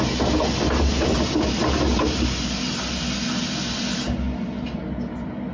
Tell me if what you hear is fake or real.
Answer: real